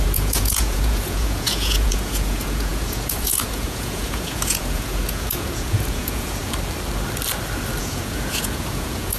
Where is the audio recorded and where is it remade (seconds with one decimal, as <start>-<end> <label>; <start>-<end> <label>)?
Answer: 0.0-6.4 remade; 6.4-7.8 recorded; 7.8-9.2 remade